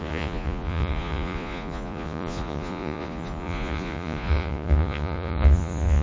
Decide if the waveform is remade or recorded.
remade